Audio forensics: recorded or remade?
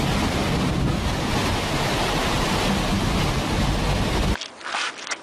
recorded